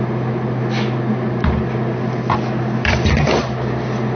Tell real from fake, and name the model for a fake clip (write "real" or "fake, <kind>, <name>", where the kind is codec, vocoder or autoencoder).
fake, vocoder, BigVGAN v2